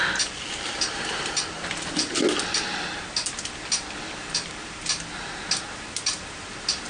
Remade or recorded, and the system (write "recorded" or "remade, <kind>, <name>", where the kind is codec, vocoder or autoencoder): recorded